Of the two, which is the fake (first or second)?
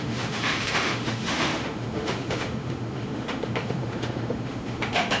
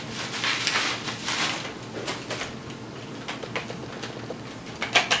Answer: first